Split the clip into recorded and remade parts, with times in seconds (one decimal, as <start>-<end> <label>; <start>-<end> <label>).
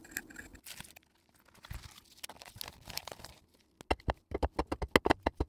0.0-2.7 recorded; 2.7-3.7 remade; 3.7-5.5 recorded